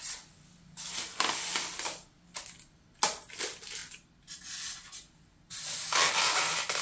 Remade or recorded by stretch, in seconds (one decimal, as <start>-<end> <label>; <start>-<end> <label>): 0.0-6.8 recorded